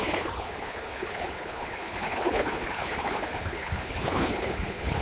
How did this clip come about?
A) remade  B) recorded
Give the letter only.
A